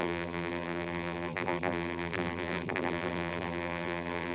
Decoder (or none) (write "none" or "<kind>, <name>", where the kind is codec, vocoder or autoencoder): vocoder, BigVGAN v2